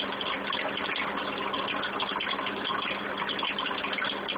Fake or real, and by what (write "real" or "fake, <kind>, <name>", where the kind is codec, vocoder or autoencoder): real